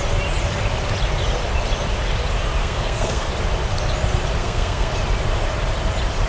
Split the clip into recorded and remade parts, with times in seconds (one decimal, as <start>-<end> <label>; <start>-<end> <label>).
0.0-2.6 recorded; 2.6-3.3 remade; 3.3-4.4 recorded; 4.4-4.9 remade; 4.9-6.3 recorded